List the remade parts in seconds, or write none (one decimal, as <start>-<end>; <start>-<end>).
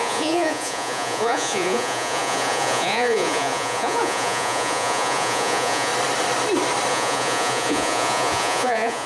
0.0-5.9; 6.9-9.1